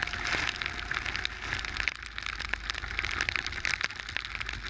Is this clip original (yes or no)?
yes